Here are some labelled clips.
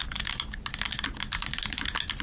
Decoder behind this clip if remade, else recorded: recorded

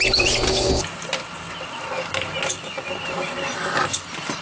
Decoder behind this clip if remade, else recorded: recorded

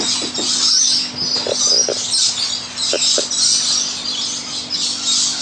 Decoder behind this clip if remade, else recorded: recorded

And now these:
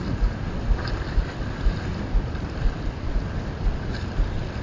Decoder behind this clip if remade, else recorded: recorded